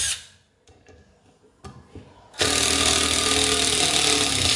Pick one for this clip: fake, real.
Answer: real